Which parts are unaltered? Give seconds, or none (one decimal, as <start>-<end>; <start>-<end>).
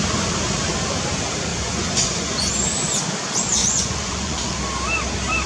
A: 0.0-1.5; 2.5-3.6; 4.6-5.5